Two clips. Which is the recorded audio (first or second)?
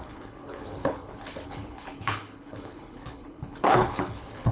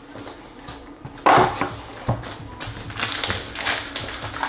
second